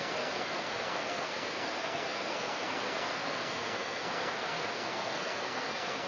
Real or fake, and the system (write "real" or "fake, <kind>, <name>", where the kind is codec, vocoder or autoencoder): fake, codec, SNAC